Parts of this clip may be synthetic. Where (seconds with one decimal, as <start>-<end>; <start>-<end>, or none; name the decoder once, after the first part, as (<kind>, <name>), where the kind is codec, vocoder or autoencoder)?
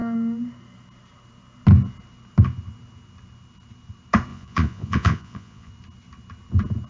4.3-5.7 (vocoder, Vocos)